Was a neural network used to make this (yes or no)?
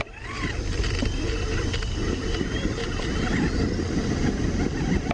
no